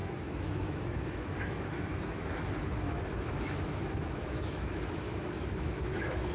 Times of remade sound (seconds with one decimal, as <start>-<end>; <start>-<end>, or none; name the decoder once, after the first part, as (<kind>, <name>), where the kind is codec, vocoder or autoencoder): 0.0-6.3 (autoencoder, DAC-VAE)